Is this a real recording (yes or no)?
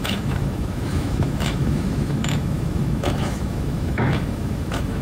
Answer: no